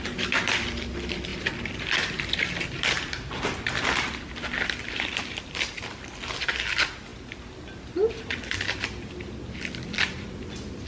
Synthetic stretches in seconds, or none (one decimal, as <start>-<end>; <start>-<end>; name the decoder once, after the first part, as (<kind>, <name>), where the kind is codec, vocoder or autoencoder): none